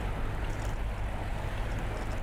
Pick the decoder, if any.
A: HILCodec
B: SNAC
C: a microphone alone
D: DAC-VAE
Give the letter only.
C